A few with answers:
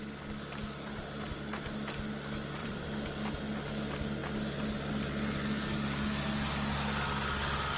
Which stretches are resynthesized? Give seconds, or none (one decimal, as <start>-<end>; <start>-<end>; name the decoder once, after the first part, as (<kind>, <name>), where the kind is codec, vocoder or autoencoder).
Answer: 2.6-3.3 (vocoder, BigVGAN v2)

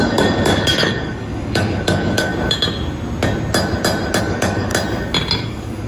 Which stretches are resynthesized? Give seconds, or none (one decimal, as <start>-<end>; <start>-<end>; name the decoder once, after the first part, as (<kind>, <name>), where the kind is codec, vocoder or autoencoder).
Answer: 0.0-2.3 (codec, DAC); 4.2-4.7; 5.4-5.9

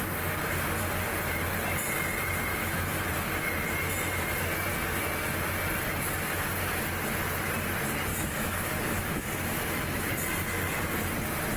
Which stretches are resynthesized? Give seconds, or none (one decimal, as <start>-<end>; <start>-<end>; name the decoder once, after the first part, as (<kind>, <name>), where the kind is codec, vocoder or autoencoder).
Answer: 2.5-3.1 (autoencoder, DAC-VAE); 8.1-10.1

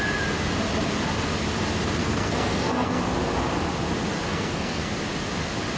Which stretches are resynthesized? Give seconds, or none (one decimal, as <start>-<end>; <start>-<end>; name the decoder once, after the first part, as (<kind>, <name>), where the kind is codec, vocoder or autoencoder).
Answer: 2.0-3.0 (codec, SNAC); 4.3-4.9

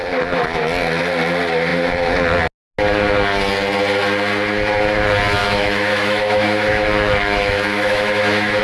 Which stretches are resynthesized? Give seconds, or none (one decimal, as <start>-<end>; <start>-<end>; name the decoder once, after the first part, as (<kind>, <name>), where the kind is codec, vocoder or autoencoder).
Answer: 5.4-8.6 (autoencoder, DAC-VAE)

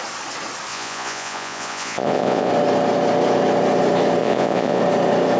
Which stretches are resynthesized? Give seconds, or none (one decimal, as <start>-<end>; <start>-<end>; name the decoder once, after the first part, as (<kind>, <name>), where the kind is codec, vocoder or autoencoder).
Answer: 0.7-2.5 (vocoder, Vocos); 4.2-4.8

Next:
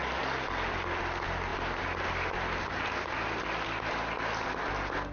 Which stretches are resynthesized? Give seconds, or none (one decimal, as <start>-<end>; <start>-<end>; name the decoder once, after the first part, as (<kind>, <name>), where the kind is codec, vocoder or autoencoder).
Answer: none